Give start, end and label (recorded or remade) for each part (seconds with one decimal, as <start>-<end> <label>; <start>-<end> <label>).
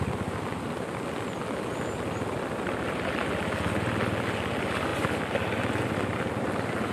0.0-6.9 recorded